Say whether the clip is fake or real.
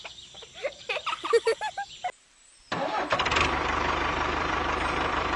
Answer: fake